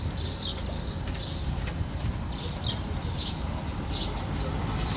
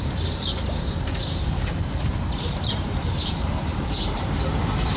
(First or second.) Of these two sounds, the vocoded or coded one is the second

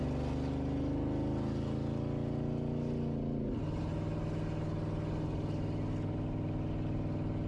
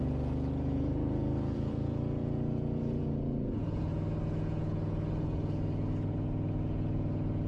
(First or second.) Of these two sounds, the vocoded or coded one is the second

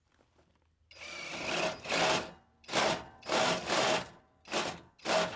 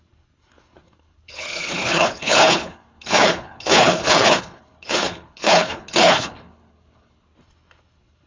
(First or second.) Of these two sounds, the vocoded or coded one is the second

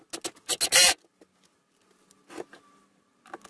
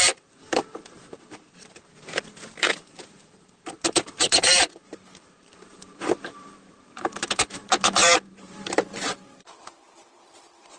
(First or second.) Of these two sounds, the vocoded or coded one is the second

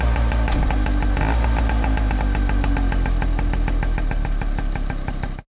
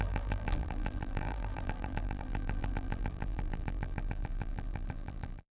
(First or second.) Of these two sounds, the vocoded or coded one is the second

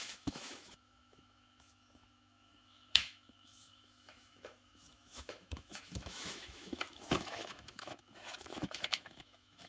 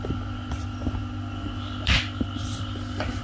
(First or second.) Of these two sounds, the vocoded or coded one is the first